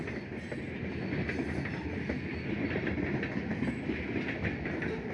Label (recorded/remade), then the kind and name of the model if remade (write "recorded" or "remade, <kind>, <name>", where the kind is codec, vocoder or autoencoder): recorded